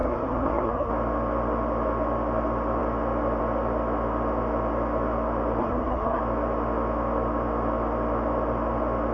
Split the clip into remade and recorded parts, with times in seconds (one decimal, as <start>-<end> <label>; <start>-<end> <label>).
0.0-0.9 remade; 0.9-5.6 recorded; 5.6-6.2 remade; 6.2-9.1 recorded

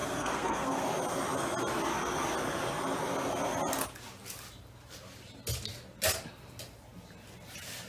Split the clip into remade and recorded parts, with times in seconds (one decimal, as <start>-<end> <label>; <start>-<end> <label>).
0.0-0.8 remade; 0.8-7.9 recorded

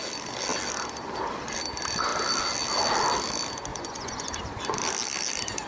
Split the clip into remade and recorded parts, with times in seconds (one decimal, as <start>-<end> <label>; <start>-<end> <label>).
0.0-3.7 recorded; 3.7-4.3 remade; 4.3-5.7 recorded

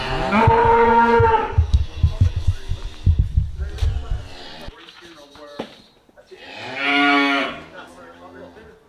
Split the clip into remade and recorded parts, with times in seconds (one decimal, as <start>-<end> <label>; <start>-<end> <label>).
0.0-0.6 recorded; 0.6-2.3 remade; 2.3-6.9 recorded; 6.9-7.9 remade; 7.9-8.9 recorded

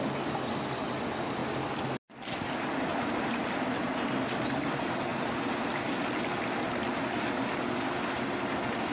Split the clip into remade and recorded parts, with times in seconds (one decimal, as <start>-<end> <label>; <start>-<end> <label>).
0.0-8.9 recorded